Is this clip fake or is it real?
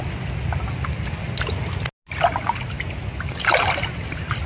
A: real